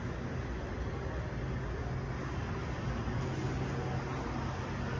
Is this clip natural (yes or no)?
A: yes